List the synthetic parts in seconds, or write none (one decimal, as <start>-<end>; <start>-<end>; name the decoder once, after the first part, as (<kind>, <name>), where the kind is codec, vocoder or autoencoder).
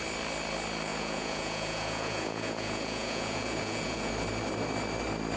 0.9-4.1 (vocoder, Vocos)